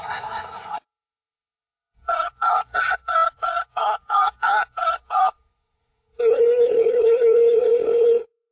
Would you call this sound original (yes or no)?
no